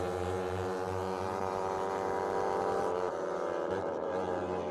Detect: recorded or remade remade